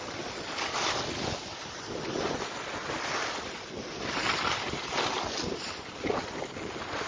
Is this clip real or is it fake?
real